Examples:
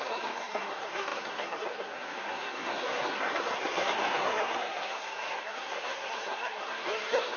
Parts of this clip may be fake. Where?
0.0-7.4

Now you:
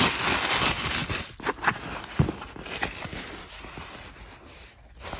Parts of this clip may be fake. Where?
none

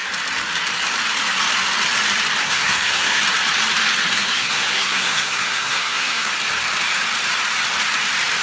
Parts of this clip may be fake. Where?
2.4-3.2; 4.1-6.3

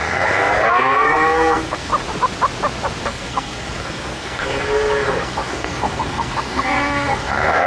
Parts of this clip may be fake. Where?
0.0-1.9; 3.0-7.7

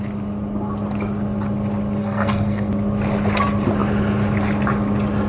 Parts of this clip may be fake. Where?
2.0-2.7

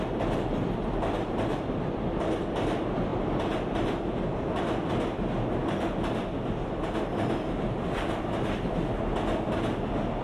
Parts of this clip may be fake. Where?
none